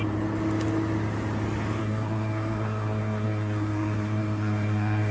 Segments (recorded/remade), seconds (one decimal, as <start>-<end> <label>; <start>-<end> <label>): 0.0-1.8 recorded; 1.8-5.1 remade